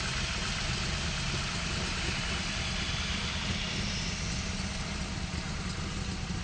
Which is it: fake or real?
real